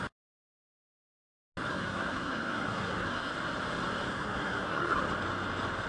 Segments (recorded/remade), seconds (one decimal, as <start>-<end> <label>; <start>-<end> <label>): 0.0-1.7 recorded; 1.7-3.3 remade; 3.3-4.1 recorded; 4.1-5.0 remade; 5.0-5.9 recorded